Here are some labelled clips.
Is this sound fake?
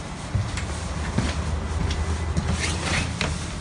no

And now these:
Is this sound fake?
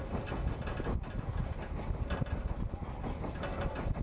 no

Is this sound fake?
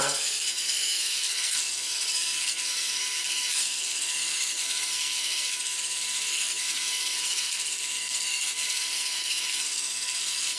yes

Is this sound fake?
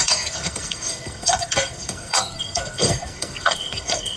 yes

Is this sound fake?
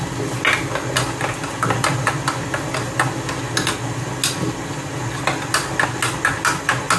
no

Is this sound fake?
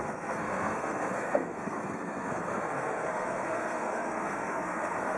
yes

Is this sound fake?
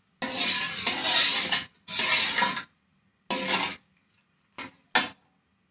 no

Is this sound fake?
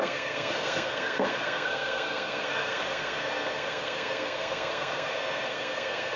yes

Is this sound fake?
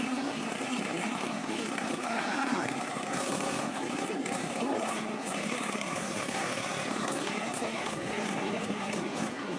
yes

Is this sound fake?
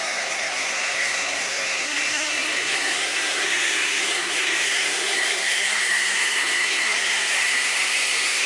yes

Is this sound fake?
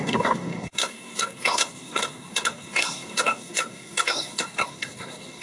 yes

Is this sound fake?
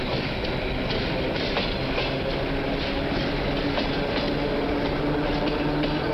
no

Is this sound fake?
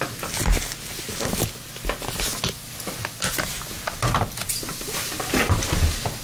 no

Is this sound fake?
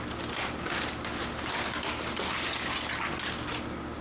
no